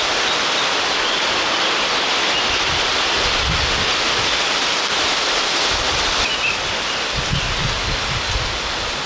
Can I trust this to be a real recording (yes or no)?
yes